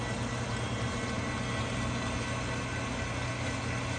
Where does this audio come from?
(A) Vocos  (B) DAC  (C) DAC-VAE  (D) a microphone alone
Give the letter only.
D